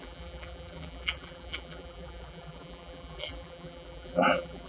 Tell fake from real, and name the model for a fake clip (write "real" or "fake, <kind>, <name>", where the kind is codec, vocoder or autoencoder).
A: fake, vocoder, BigVGAN v2